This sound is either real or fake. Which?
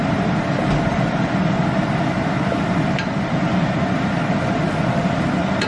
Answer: real